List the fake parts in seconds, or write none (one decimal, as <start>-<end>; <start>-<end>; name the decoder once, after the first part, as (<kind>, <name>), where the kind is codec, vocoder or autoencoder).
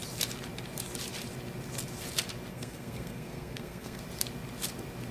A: 2.5-4.0 (codec, SNAC)